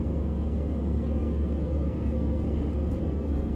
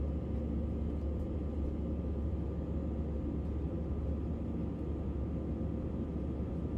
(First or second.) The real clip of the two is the second